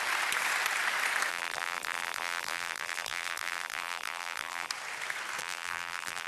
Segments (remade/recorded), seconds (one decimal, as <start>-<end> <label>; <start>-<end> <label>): 0.0-1.3 recorded; 1.3-4.7 remade; 4.7-5.4 recorded; 5.4-6.3 remade